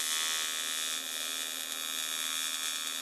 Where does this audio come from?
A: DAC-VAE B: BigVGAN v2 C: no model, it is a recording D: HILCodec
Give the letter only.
C